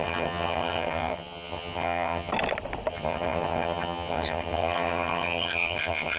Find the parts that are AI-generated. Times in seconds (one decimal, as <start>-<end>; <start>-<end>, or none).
0.0-2.3; 2.9-6.2